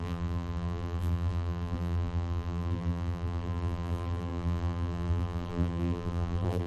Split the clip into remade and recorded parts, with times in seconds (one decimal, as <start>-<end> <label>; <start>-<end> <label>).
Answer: 0.0-6.7 remade